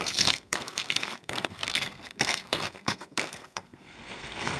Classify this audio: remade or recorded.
remade